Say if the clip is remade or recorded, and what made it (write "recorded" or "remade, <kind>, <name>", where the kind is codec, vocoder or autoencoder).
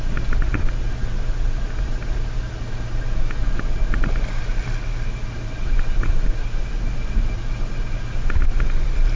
recorded